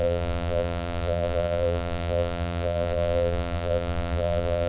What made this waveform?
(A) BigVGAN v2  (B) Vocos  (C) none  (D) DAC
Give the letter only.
A